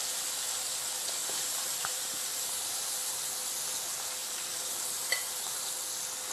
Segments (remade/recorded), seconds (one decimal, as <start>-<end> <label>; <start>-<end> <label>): 0.0-1.2 recorded; 1.2-3.2 remade; 3.2-4.2 recorded; 4.2-5.7 remade; 5.7-6.3 recorded